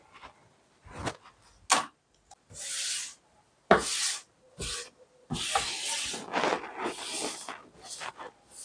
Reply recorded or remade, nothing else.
recorded